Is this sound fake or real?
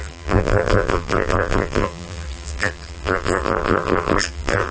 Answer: fake